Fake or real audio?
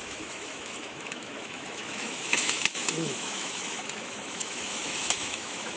fake